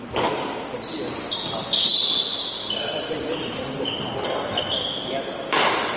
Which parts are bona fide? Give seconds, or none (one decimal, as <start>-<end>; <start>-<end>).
0.0-6.0